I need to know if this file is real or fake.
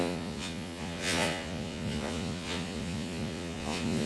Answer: fake